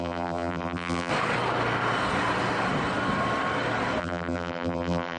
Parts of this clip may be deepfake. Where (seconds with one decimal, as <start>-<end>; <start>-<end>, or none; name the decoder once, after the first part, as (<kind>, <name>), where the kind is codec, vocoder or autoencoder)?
0.0-1.1 (vocoder, BigVGAN v2); 4.0-5.2